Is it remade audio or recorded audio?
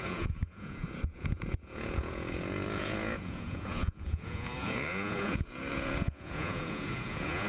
remade